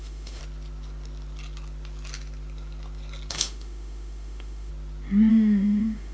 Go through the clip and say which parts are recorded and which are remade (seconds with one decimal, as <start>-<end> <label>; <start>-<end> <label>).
0.0-0.4 remade; 0.4-3.3 recorded; 3.3-4.7 remade; 4.7-5.3 recorded; 5.3-6.1 remade